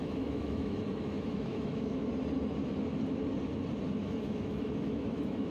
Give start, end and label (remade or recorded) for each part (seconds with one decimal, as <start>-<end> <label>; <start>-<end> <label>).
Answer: 0.0-2.0 remade; 2.0-4.0 recorded; 4.0-5.5 remade